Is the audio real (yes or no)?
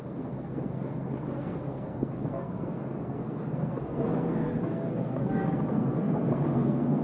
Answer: no